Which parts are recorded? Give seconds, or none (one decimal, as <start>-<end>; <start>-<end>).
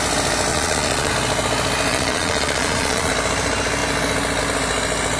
0.0-0.5; 1.1-1.9; 3.1-5.2